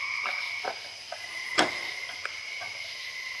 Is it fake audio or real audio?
real